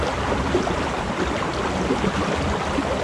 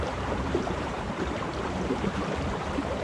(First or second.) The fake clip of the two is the second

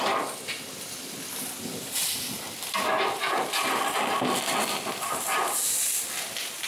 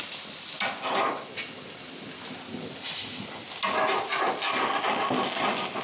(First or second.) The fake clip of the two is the first